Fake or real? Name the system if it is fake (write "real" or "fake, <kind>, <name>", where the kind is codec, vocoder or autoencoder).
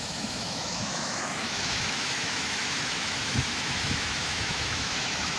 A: fake, autoencoder, DAC-VAE